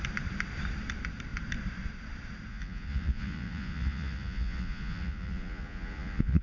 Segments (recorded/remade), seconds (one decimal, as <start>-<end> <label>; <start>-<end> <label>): 0.0-2.5 recorded; 2.5-6.4 remade